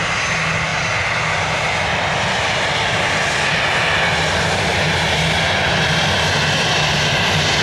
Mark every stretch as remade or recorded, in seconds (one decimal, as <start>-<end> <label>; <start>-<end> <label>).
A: 0.0-7.6 recorded